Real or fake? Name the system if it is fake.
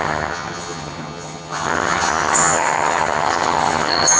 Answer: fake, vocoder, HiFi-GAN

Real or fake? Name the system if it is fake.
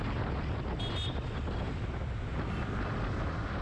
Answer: real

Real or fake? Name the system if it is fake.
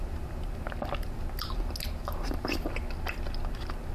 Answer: real